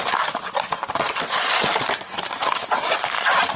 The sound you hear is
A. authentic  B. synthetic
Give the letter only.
A